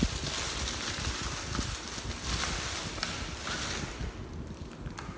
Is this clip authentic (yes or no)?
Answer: yes